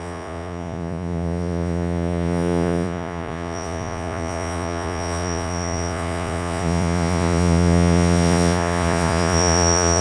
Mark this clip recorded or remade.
remade